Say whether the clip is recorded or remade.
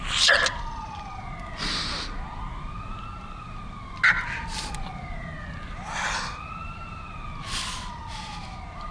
recorded